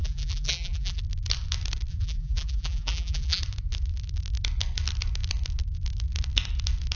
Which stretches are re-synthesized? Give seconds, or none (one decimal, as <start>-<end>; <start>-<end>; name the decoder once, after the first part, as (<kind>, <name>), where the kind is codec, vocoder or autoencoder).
0.0-1.0 (vocoder, BigVGAN v2); 1.9-3.4